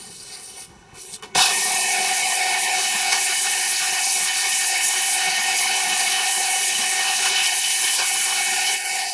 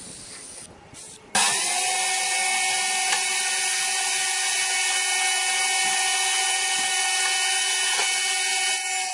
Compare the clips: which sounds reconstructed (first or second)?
first